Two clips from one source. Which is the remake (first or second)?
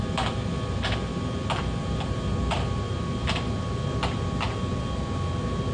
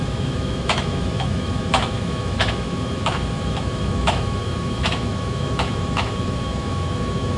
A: second